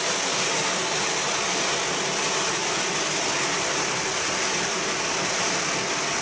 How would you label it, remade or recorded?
recorded